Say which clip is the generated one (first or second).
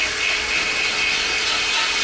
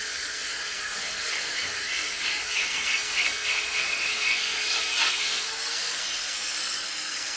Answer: second